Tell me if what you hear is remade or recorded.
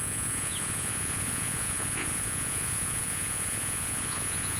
remade